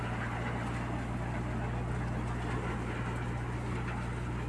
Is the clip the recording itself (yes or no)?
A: yes